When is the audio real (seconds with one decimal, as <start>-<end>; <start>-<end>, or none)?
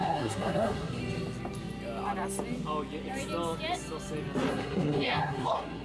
1.0-4.5